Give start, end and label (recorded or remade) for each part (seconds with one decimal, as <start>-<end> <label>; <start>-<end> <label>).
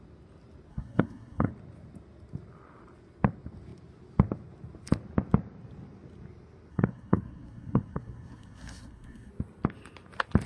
0.0-0.7 recorded; 0.7-1.5 remade; 1.5-6.7 recorded; 6.7-9.3 remade; 9.3-10.5 recorded